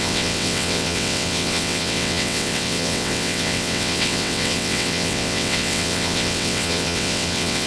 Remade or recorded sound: remade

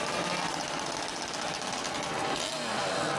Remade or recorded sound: recorded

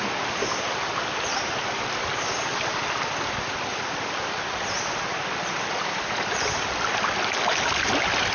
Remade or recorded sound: recorded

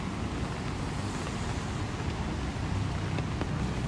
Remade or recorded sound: recorded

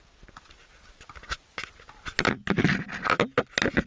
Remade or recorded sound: recorded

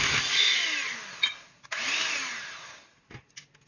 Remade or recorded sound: recorded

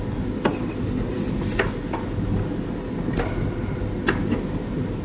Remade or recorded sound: recorded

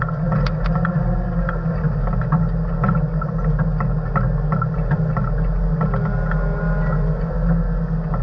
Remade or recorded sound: recorded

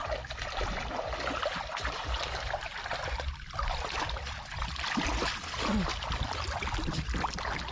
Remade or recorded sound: recorded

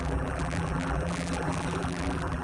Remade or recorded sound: remade